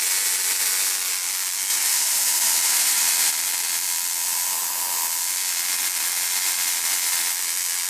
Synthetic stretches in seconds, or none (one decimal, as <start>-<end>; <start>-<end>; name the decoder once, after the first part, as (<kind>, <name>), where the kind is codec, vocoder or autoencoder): 1.7-3.3 (vocoder, BigVGAN v2)